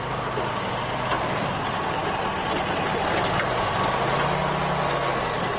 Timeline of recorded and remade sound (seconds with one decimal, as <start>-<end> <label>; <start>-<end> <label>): 0.0-5.6 recorded